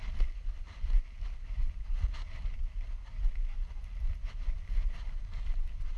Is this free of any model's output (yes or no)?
yes